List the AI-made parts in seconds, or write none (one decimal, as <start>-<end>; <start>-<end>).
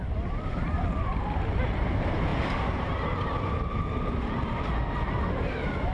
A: none